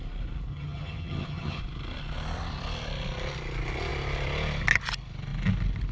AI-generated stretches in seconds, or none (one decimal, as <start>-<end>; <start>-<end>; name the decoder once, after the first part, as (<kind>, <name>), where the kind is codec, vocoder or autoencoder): 0.5-1.6 (vocoder, HiFi-GAN)